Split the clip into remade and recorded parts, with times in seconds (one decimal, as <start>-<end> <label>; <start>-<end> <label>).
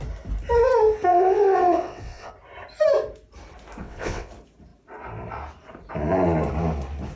0.0-1.1 recorded; 1.1-2.3 remade; 2.3-3.8 recorded; 3.8-4.3 remade; 4.3-7.2 recorded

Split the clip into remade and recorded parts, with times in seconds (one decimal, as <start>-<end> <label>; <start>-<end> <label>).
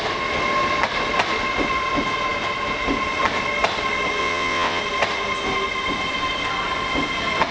0.0-4.2 recorded; 4.2-4.8 remade; 4.8-7.5 recorded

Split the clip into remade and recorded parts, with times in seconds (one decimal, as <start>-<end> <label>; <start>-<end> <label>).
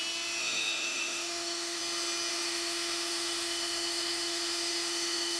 0.0-0.4 recorded; 0.4-1.8 remade; 1.8-2.3 recorded; 2.3-5.4 remade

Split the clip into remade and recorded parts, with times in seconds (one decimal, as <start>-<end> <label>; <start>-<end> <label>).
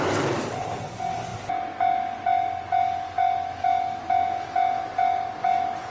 0.0-5.9 recorded